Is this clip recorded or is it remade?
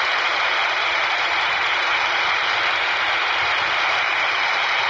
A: remade